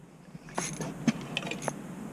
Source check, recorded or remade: recorded